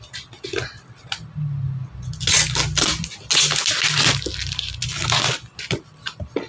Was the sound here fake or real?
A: real